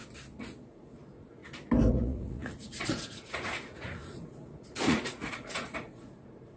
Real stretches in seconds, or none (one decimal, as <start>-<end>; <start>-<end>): 0.0-0.7; 1.4-1.9